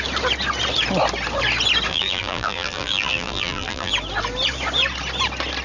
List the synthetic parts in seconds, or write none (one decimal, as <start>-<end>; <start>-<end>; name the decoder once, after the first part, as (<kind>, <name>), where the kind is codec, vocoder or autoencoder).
1.9-3.9 (vocoder, BigVGAN v2)